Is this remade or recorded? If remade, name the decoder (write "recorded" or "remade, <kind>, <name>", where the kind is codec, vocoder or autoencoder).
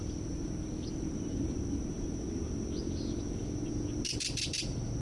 recorded